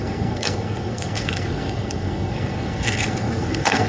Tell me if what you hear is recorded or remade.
remade